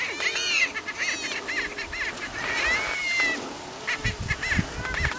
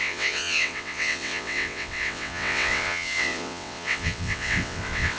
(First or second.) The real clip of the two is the first